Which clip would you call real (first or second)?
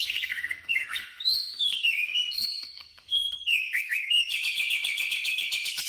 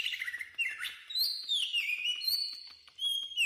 second